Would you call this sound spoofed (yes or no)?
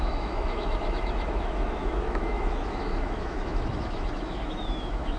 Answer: yes